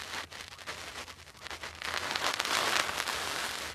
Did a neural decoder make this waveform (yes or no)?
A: no